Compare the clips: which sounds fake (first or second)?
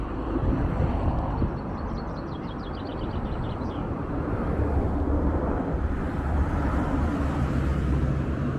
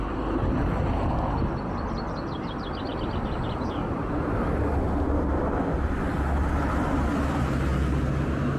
first